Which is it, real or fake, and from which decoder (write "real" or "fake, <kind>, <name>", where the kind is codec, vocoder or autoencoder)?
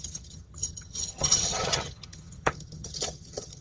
fake, vocoder, HiFi-GAN